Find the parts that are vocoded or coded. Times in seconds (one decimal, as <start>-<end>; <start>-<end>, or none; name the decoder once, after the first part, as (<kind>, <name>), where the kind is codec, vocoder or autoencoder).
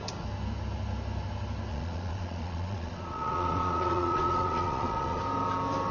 1.7-5.2 (vocoder, Vocos)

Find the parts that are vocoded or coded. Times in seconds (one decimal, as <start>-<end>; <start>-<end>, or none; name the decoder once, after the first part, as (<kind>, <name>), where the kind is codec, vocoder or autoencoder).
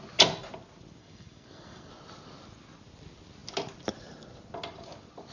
1.0-1.9 (codec, SNAC)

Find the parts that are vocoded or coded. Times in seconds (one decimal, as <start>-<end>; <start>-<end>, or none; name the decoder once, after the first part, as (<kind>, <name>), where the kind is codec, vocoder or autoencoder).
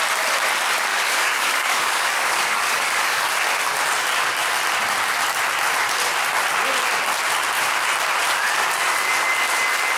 0.9-3.3 (codec, DAC)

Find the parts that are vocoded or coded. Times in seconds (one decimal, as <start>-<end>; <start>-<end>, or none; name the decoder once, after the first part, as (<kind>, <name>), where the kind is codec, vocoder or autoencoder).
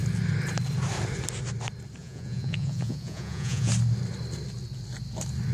2.0-3.7 (vocoder, Vocos)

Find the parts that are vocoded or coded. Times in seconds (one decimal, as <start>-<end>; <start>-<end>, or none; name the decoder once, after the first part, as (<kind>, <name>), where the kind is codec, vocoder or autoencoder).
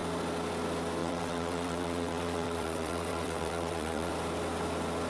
1.0-4.1 (vocoder, WaveNeXt)